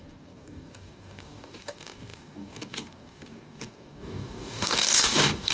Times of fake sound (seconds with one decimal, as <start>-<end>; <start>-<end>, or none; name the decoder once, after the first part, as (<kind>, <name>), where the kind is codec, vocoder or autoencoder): 0.0-5.5 (codec, DAC)